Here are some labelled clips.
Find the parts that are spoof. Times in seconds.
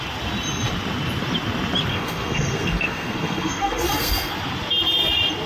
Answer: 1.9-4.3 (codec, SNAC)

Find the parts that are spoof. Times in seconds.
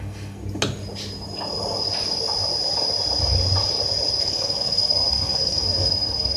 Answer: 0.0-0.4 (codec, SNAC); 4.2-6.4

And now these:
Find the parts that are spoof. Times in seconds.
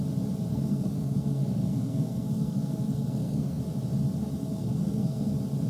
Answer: 0.5-3.6 (codec, SNAC); 4.4-5.3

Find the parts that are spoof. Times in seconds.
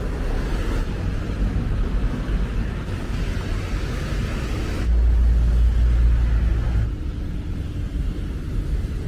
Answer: none